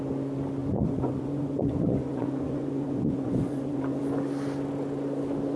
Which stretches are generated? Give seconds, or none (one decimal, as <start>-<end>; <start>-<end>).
0.6-4.0